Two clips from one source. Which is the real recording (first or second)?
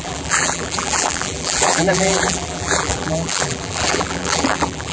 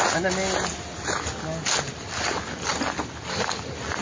second